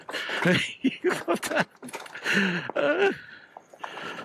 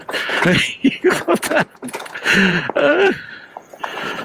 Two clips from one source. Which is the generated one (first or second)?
second